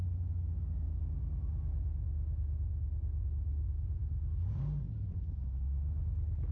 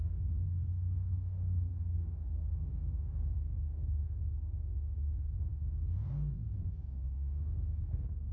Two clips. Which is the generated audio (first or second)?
second